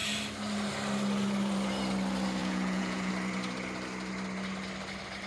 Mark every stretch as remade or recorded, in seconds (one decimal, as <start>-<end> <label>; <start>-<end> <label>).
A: 0.0-2.4 recorded; 2.4-3.1 remade; 3.1-5.3 recorded